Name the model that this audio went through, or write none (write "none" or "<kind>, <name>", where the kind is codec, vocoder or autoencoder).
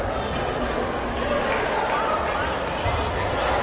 none